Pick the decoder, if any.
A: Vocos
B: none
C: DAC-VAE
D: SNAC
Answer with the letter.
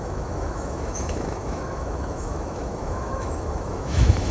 C